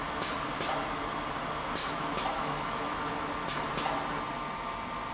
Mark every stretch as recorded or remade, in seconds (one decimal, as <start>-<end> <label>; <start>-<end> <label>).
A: 0.0-1.8 recorded; 1.8-3.1 remade; 3.1-5.1 recorded